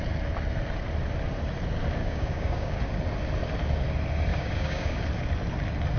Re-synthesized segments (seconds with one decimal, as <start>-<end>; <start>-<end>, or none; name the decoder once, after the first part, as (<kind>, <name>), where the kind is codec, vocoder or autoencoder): 2.0-2.8 (codec, DAC); 4.3-5.0